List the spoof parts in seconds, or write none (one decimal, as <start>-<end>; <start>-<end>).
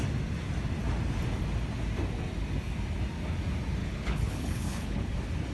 3.8-5.1